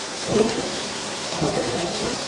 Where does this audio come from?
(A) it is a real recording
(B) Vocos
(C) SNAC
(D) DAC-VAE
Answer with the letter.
C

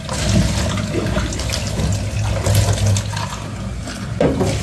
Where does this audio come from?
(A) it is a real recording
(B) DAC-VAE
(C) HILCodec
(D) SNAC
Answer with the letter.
A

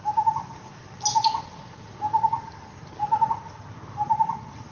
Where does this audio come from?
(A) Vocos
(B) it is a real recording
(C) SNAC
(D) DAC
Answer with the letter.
B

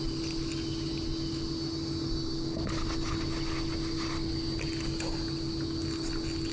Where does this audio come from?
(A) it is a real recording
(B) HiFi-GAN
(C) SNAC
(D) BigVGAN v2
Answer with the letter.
A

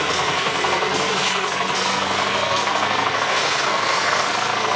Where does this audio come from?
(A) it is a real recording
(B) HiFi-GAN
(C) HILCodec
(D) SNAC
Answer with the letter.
D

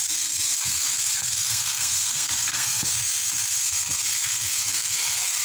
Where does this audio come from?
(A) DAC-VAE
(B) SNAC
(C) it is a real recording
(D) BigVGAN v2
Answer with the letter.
B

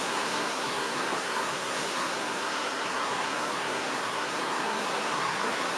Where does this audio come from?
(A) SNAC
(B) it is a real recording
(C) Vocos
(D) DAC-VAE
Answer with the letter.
A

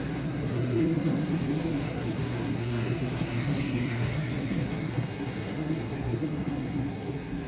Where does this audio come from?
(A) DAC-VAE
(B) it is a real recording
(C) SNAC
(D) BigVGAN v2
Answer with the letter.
C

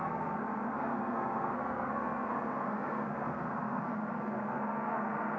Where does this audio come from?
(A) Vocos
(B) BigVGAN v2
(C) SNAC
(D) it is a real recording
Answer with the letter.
C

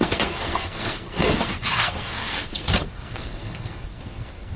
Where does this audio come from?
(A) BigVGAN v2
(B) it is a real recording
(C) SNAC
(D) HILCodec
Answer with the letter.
C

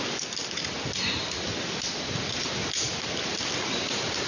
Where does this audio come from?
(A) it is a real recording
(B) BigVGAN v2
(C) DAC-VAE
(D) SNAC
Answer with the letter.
A